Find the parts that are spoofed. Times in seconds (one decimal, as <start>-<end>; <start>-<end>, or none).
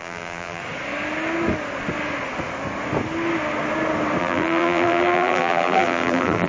0.0-0.6; 4.2-6.5